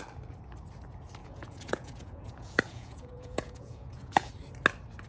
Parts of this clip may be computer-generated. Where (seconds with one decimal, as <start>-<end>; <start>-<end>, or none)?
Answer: 1.2-4.3